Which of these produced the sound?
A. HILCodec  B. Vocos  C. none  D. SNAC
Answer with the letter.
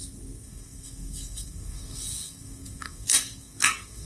D